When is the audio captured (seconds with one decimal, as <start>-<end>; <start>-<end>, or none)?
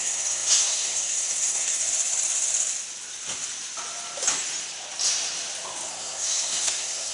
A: 1.8-5.9